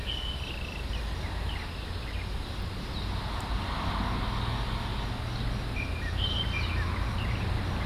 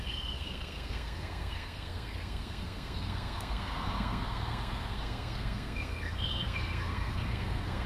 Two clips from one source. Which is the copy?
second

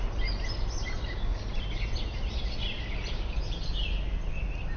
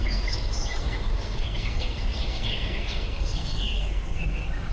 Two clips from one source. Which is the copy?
second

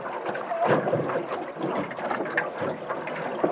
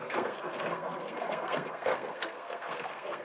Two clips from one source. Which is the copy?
second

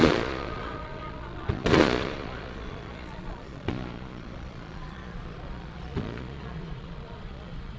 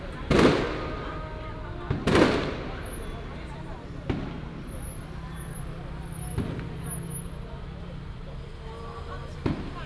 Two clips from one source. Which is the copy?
first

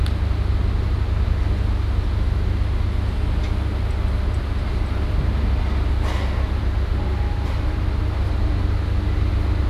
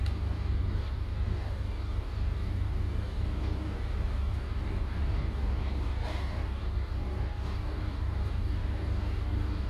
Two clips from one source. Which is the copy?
second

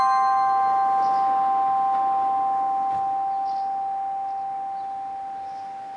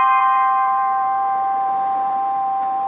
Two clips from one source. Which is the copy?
second